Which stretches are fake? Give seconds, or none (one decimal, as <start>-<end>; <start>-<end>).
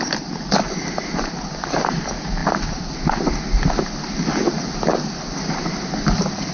none